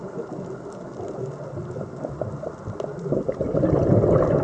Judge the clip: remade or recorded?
recorded